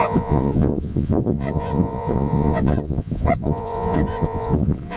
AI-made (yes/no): yes